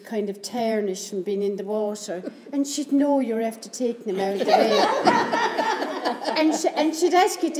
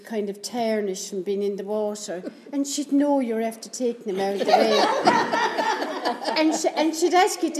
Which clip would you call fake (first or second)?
first